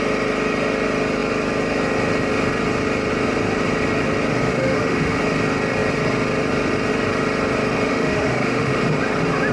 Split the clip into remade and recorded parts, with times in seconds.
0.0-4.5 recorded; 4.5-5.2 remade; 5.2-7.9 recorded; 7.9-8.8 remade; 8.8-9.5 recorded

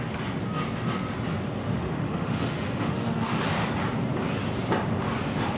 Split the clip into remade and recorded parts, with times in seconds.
0.0-1.6 recorded; 1.6-3.4 remade; 3.4-5.6 recorded

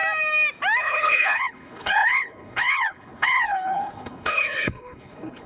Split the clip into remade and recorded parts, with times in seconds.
0.0-0.8 recorded; 0.8-5.5 remade

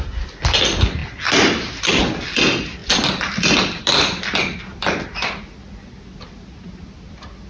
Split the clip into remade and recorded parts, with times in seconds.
0.0-7.5 recorded